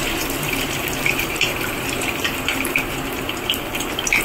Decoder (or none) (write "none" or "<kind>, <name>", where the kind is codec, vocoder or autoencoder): vocoder, BigVGAN v2